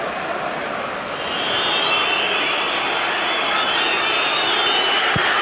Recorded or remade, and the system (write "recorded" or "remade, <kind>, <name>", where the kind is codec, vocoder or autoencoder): recorded